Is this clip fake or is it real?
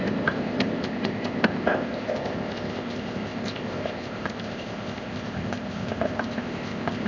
fake